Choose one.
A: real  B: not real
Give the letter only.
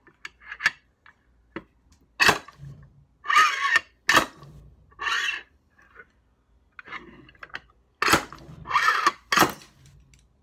A